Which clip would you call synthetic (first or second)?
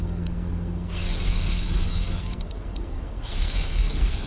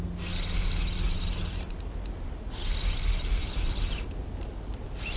first